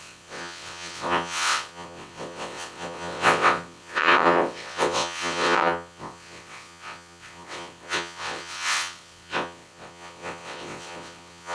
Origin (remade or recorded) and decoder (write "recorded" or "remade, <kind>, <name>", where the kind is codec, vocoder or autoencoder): remade, vocoder, WaveNeXt